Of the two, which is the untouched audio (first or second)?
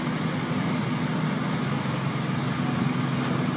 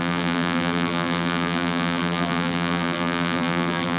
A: first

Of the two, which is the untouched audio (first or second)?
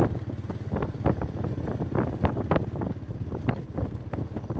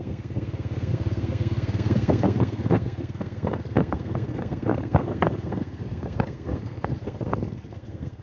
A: first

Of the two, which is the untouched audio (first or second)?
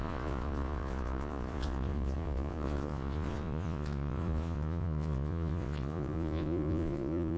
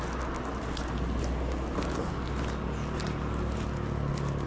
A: second